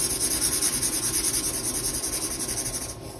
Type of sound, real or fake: real